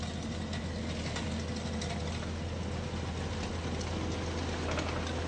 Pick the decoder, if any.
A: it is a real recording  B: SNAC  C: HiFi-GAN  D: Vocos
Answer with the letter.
A